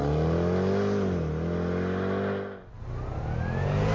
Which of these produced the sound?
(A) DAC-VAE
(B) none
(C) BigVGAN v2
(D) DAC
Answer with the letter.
B